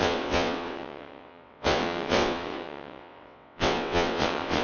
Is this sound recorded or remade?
remade